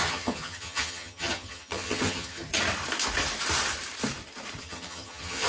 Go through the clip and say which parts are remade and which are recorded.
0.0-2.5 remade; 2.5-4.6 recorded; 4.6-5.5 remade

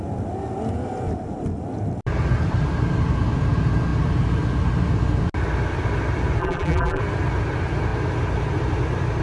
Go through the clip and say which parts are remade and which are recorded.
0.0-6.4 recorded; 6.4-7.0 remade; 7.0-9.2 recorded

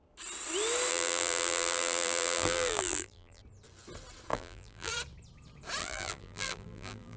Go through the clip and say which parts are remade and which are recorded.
0.0-0.9 recorded; 0.9-3.4 remade; 3.4-4.3 recorded; 4.3-4.9 remade; 4.9-5.8 recorded; 5.8-7.2 remade

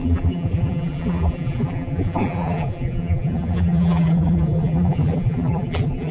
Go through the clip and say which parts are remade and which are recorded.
0.0-6.1 remade

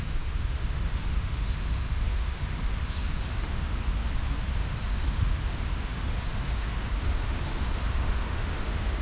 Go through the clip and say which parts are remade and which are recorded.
0.0-4.0 remade; 4.0-4.6 recorded; 4.6-9.0 remade

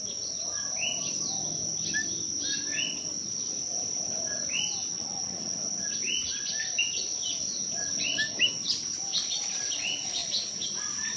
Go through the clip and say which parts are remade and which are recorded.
0.0-4.8 recorded; 4.8-5.6 remade; 5.6-11.2 recorded

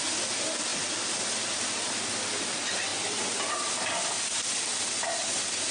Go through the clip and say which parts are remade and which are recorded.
0.0-5.7 recorded